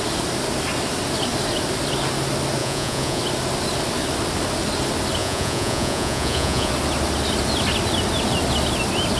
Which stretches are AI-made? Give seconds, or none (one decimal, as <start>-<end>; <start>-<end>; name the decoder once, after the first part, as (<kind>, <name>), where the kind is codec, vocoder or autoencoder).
2.6-3.2 (vocoder, Vocos); 5.2-6.7